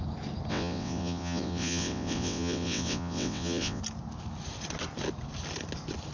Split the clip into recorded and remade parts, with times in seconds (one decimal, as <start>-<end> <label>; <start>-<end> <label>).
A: 0.0-0.5 recorded; 0.5-3.8 remade; 3.8-6.1 recorded